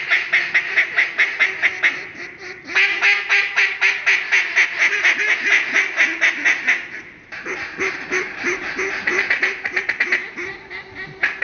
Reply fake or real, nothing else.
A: real